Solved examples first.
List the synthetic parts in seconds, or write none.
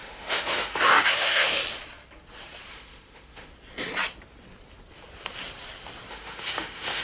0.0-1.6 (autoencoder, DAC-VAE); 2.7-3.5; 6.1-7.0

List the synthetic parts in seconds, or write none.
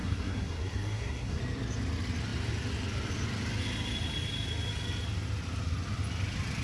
0.0-1.4 (codec, SNAC)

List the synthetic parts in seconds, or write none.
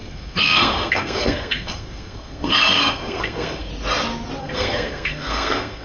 0.0-3.7 (codec, SNAC); 4.4-5.8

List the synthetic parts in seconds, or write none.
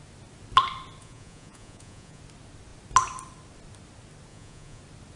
1.0-2.2 (vocoder, Vocos); 4.3-4.8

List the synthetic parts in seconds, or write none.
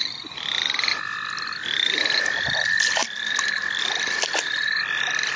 none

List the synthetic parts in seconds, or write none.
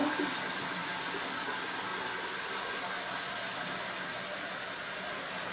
none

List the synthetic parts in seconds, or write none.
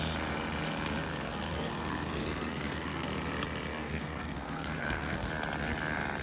1.1-3.1 (codec, SNAC); 3.8-5.3